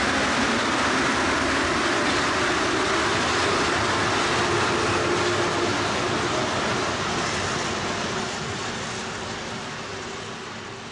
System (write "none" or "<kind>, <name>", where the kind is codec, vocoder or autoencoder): none